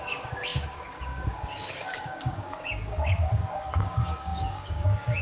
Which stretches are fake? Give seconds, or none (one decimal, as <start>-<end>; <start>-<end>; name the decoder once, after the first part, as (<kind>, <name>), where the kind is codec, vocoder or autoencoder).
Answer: 0.0-5.2 (codec, DAC)